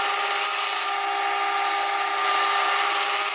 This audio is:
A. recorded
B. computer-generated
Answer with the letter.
A